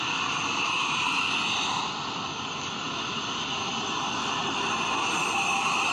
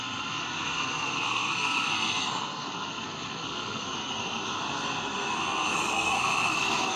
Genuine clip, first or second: first